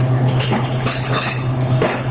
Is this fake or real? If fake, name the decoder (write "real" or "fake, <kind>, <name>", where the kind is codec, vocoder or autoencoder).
fake, codec, HILCodec